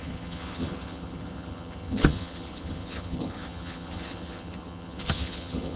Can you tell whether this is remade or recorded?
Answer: remade